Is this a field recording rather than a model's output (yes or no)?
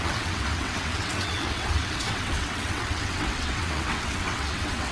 no